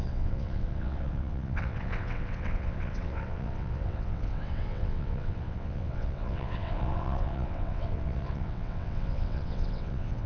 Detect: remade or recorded remade